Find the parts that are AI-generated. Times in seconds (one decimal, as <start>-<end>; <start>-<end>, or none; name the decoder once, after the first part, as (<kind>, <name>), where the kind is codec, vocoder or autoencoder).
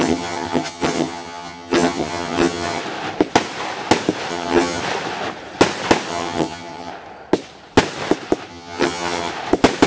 0.0-2.8 (vocoder, HiFi-GAN); 4.3-4.8; 6.1-6.9; 8.5-9.3